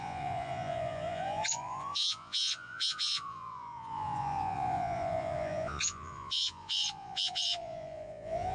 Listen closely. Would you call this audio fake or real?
fake